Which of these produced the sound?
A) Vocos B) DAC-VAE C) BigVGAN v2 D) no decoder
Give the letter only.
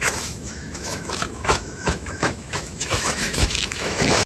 B